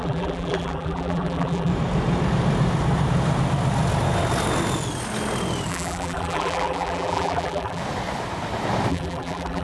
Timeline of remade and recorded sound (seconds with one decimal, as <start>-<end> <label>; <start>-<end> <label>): 0.0-1.7 remade; 1.7-5.7 recorded; 5.7-7.8 remade; 7.8-8.9 recorded; 8.9-9.6 remade